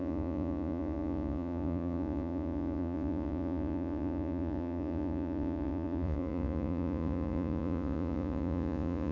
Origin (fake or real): fake